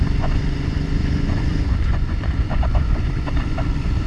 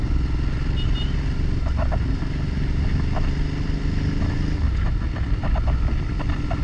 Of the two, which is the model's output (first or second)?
first